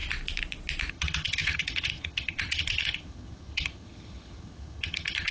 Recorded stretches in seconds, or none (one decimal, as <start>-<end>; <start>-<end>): 0.0-0.9